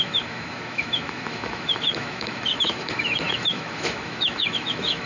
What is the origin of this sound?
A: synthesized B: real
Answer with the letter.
A